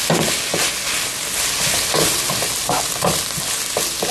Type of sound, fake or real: real